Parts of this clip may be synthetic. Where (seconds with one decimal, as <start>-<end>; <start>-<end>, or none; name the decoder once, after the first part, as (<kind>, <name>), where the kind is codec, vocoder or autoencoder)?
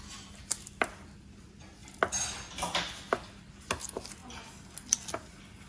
none